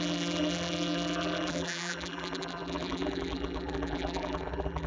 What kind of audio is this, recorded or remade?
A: remade